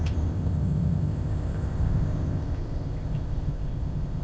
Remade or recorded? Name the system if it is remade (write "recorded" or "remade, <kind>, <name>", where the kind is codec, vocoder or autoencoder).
remade, codec, ZipCodec